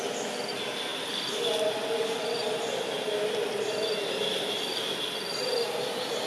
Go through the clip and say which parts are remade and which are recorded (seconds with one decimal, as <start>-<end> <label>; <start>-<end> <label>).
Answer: 0.0-6.3 recorded